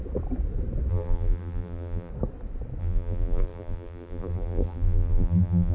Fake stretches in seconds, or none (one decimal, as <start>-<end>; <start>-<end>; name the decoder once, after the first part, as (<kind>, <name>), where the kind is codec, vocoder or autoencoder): 0.9-2.1 (vocoder, BigVGAN v2); 2.8-5.7